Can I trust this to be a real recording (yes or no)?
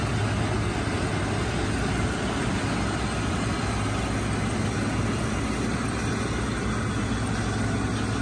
yes